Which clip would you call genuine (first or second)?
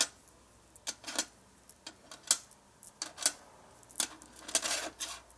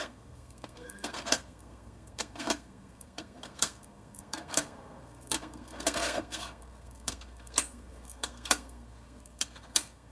first